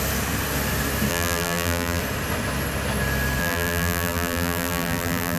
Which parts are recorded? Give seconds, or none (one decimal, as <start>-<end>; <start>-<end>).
0.0-1.1; 2.0-3.4